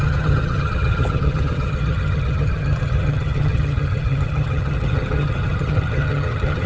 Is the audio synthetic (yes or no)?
yes